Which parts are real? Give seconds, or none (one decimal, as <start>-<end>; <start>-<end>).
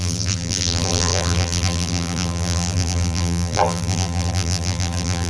none